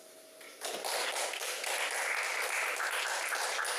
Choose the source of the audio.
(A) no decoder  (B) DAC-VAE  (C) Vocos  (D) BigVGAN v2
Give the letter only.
A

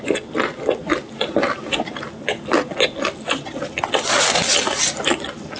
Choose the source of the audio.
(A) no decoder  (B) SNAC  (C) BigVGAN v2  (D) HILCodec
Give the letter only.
A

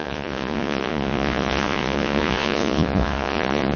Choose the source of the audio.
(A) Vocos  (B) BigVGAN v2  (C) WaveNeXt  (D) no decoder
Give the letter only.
A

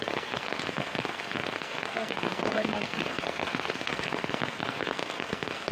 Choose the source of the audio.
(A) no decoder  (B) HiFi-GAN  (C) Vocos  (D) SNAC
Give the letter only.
D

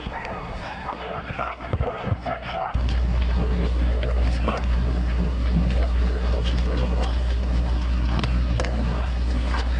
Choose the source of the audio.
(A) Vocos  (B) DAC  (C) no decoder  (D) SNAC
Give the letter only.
D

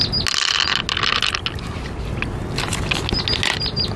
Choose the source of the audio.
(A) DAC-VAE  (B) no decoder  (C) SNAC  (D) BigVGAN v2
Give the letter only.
B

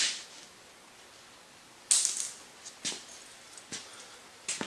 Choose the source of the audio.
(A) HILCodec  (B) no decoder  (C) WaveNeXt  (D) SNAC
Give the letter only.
B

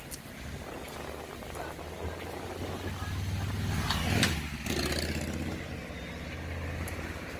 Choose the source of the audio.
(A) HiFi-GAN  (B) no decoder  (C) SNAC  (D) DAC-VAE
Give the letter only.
B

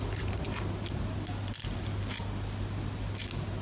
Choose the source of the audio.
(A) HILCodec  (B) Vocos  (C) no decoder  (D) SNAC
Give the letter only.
C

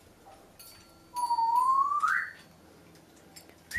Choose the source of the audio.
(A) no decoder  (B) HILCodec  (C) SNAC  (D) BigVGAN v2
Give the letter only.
A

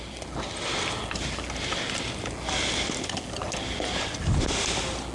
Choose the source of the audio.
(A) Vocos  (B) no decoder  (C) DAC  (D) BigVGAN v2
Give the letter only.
B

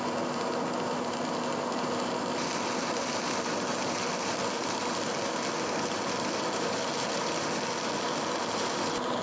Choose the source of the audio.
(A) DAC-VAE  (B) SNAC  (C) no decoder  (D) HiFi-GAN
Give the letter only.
C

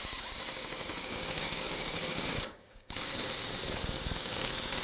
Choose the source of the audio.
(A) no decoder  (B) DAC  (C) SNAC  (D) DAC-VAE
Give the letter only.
B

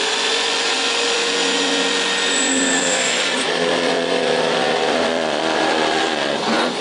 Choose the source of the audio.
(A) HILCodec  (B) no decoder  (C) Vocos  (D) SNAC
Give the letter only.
C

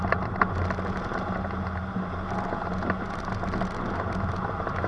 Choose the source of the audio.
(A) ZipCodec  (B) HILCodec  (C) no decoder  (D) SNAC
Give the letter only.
C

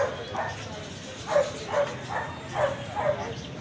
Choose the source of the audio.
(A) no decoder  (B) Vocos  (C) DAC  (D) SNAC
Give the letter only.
A